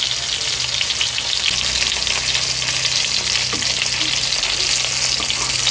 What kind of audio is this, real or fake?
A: real